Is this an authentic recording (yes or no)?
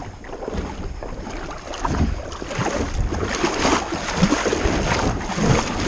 yes